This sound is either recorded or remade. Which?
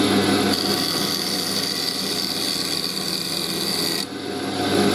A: recorded